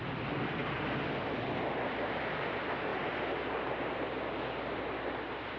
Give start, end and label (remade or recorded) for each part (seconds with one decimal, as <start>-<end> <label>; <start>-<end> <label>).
0.0-5.6 recorded